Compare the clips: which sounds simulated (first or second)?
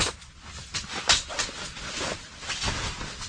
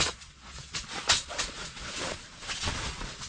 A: second